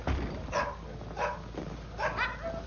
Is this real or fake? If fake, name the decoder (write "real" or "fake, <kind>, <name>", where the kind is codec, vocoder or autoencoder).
real